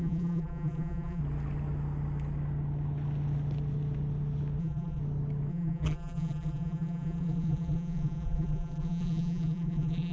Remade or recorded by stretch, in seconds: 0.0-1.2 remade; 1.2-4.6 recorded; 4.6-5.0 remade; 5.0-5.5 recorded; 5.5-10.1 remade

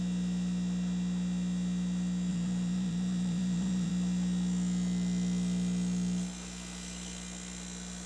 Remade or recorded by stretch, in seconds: 0.0-2.3 recorded; 2.3-3.9 remade; 3.9-8.1 recorded

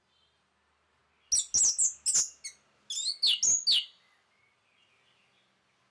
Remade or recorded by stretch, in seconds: 0.0-1.0 remade; 1.0-4.5 recorded; 4.5-5.9 remade